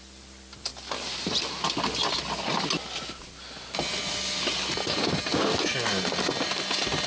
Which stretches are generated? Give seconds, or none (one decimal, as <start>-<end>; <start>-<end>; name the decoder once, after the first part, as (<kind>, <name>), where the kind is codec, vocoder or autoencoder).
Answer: none